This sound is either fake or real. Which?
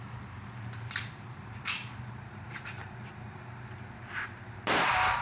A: fake